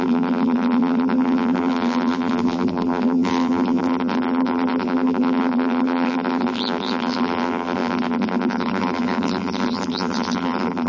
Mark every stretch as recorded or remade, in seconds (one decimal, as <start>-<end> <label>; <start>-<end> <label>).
0.0-10.9 remade